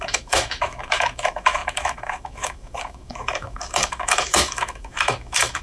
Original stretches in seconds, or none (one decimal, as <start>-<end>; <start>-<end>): none